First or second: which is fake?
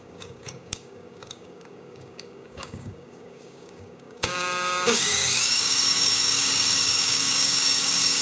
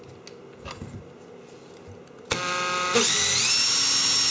first